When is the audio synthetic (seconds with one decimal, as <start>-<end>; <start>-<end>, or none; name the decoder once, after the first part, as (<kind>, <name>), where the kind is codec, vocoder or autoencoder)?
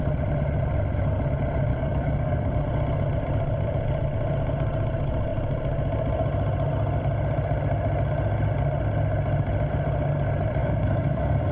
1.7-2.5 (codec, DAC); 10.6-11.5